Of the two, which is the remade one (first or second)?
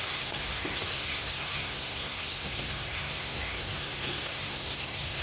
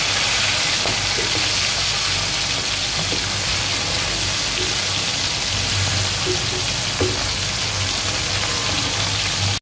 first